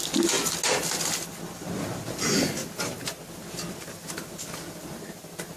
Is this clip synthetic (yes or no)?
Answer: no